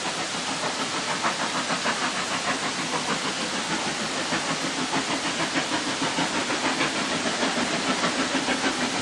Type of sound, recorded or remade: recorded